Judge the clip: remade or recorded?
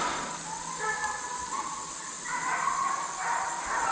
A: recorded